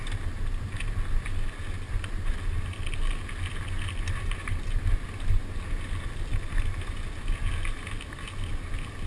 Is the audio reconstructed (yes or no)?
no